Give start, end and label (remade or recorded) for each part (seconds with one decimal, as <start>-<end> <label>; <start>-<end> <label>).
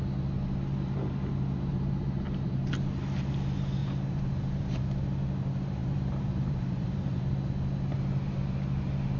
0.0-1.7 recorded; 1.7-2.7 remade; 2.7-3.8 recorded; 3.8-4.8 remade; 4.8-5.8 recorded; 5.8-7.2 remade; 7.2-9.2 recorded